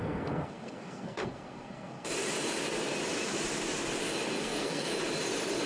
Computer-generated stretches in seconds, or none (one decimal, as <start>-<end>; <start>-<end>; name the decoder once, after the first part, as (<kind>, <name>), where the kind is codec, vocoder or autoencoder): 0.0-2.1 (codec, SNAC); 4.4-4.9